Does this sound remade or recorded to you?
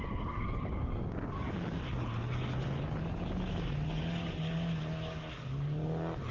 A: recorded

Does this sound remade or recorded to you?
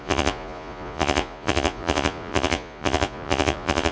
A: remade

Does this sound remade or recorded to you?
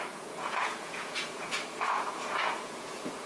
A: remade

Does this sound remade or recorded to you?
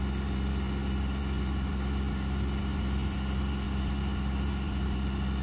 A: recorded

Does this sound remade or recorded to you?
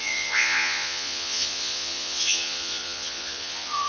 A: remade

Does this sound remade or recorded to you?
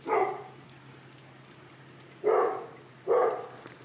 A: recorded